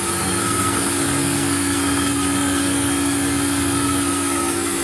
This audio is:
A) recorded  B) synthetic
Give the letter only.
B